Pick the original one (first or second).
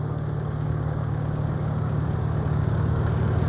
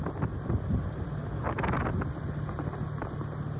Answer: second